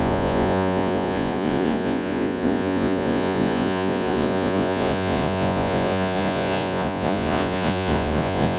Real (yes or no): no